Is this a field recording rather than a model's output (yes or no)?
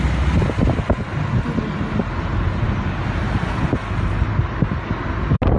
yes